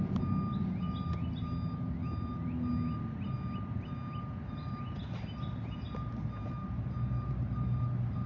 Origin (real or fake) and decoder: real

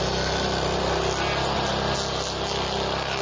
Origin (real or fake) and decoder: real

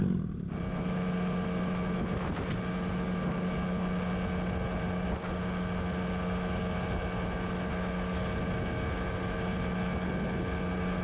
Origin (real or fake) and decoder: real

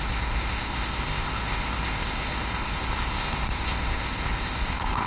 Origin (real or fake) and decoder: fake, codec, ZipCodec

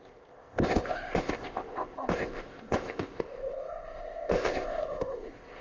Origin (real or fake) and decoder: fake, codec, ZipCodec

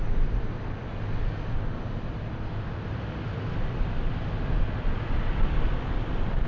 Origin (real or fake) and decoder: real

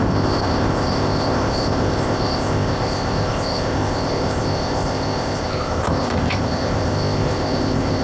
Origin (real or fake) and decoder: fake, codec, ZipCodec